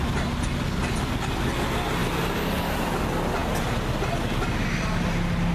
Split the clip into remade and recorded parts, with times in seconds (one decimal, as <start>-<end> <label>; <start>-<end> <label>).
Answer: 0.0-5.5 recorded